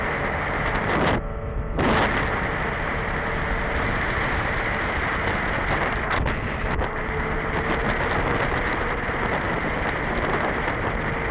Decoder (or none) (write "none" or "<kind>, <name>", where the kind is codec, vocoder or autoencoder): none